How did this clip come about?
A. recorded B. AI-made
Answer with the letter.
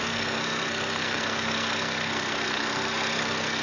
B